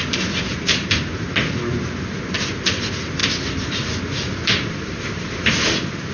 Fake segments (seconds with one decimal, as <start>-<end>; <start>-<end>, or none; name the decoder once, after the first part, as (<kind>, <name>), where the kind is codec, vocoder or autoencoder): 0.5-1.3 (vocoder, BigVGAN v2); 3.2-5.6